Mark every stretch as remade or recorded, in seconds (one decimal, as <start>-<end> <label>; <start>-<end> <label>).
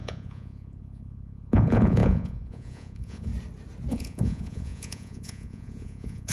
0.0-3.3 remade; 3.3-3.9 recorded; 3.9-6.3 remade